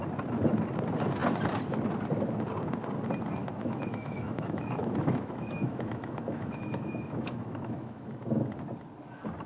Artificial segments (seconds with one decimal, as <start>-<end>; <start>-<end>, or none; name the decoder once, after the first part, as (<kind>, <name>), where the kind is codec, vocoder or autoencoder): 3.4-8.4 (autoencoder, DAC-VAE)